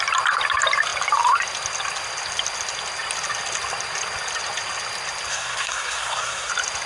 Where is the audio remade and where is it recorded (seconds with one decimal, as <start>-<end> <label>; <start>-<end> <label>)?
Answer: 0.0-5.3 recorded; 5.3-6.5 remade; 6.5-6.9 recorded